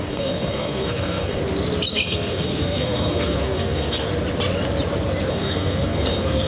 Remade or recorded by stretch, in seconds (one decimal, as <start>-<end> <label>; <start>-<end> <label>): 0.0-1.4 remade; 1.4-1.9 recorded; 1.9-4.1 remade; 4.1-5.3 recorded; 5.3-6.5 remade